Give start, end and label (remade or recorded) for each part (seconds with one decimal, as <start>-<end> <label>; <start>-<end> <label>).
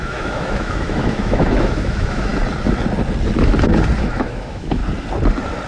0.0-2.3 remade; 2.3-4.0 recorded; 4.0-4.8 remade; 4.8-5.7 recorded